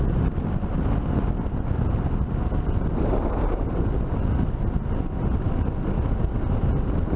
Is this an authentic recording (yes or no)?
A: yes